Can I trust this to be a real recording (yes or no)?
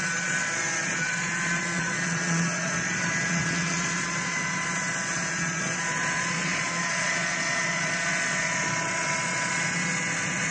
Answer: no